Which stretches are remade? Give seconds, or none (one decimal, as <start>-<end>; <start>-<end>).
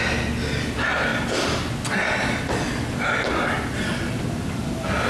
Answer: none